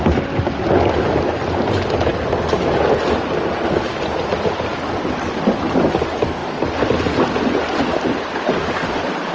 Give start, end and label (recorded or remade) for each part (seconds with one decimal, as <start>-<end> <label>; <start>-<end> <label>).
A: 0.0-9.3 recorded

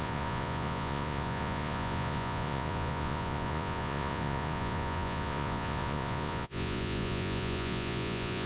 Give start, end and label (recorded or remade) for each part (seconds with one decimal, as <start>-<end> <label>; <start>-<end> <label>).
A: 0.0-8.5 remade

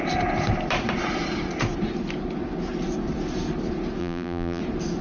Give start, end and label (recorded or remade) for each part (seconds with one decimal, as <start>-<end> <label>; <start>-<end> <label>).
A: 0.0-4.0 recorded; 4.0-4.6 remade; 4.6-5.0 recorded